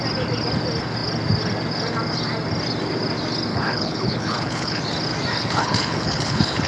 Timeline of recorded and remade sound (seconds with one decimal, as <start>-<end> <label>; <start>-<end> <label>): 0.0-3.5 recorded; 3.5-4.8 remade; 4.8-5.3 recorded; 5.3-6.7 remade